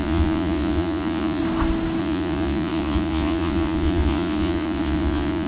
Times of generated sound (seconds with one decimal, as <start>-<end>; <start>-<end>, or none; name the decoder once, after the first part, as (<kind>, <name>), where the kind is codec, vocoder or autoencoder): 0.0-1.4 (vocoder, Vocos); 2.0-5.5